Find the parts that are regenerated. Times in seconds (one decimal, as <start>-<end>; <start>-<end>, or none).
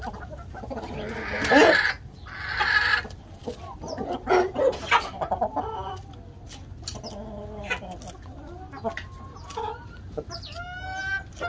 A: none